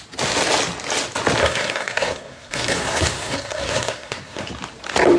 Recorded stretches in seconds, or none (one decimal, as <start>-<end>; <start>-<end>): 0.0-1.4; 4.5-5.2